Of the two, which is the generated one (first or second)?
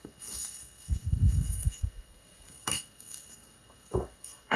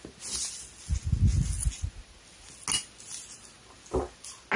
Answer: first